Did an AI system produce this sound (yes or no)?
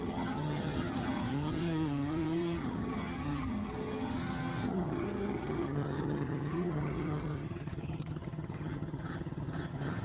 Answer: yes